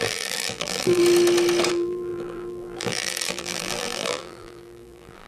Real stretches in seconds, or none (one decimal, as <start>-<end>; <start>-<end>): 1.0-1.7